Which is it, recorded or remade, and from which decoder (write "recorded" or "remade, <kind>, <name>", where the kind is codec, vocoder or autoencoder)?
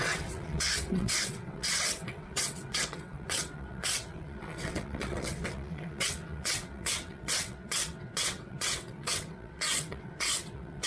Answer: remade, vocoder, WaveNeXt